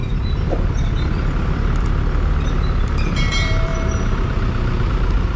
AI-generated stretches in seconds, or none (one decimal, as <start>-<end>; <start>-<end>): 3.2-3.7; 4.9-5.4